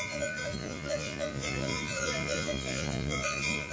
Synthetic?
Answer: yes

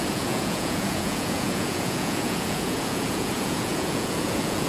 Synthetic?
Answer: yes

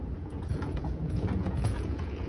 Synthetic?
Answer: yes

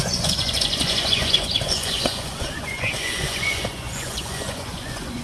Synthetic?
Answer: yes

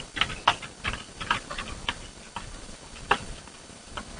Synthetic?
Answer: no